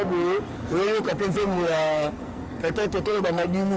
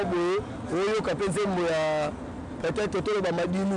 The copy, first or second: first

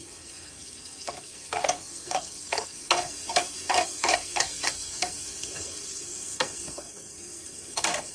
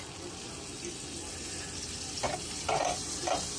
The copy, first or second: first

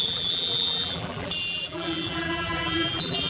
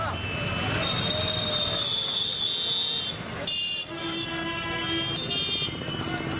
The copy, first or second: first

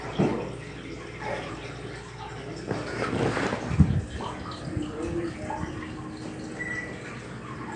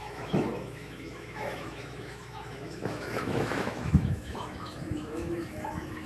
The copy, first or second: second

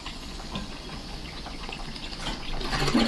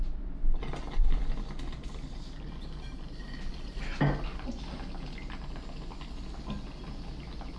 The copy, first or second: first